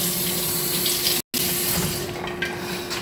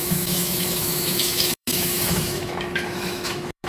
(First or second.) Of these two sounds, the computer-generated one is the second